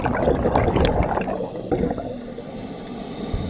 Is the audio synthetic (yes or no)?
no